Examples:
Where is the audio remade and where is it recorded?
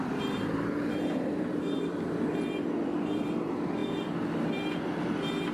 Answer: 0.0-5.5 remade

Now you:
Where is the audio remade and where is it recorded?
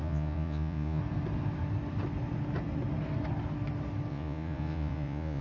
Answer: 0.0-1.0 remade; 1.0-4.1 recorded; 4.1-5.4 remade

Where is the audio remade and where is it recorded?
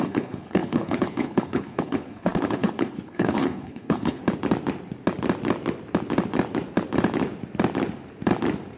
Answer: 0.0-4.2 remade; 4.2-8.8 recorded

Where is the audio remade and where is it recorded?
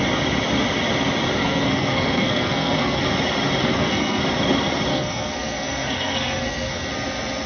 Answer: 0.0-1.4 recorded; 1.4-3.0 remade; 3.0-3.6 recorded; 3.6-4.2 remade; 4.2-4.9 recorded; 4.9-6.9 remade; 6.9-7.5 recorded